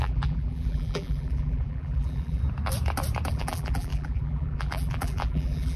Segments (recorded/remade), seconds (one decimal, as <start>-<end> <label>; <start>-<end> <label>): 0.0-2.4 remade; 2.4-3.3 recorded; 3.3-5.8 remade